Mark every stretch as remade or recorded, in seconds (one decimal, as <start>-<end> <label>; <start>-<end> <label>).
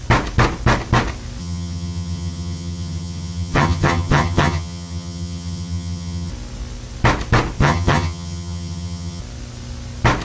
0.0-1.4 recorded; 1.4-6.3 remade; 6.3-7.6 recorded; 7.6-9.2 remade; 9.2-10.2 recorded